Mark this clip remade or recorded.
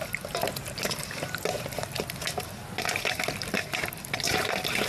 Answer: recorded